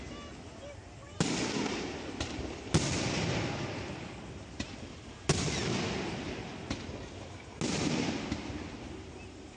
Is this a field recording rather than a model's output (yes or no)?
yes